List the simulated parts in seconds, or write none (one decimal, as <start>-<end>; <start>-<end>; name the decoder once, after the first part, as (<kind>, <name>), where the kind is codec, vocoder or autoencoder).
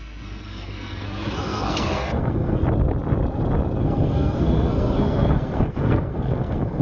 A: 0.0-2.6 (codec, SNAC); 3.8-6.8